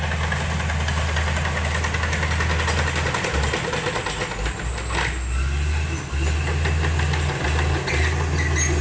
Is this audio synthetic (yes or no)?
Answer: no